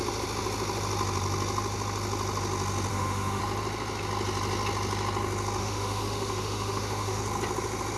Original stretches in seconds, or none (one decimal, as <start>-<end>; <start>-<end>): 0.0-2.9; 3.4-5.6; 7.2-8.0